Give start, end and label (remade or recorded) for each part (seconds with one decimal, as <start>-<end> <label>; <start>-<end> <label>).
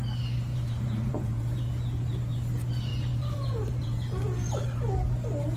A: 0.0-0.5 recorded; 0.5-2.1 remade; 2.1-2.9 recorded; 2.9-4.5 remade; 4.5-5.6 recorded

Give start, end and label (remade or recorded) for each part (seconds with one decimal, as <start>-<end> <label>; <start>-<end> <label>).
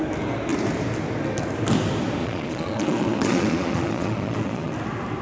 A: 0.0-2.2 recorded; 2.2-4.7 remade; 4.7-5.2 recorded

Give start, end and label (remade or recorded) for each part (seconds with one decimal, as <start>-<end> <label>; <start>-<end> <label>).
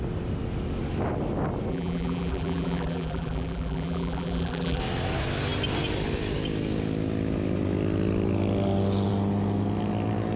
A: 0.0-1.7 recorded; 1.7-4.8 remade; 4.8-10.4 recorded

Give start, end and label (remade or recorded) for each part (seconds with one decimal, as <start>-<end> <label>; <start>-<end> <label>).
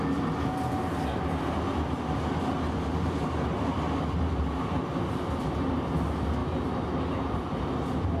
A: 0.0-8.2 recorded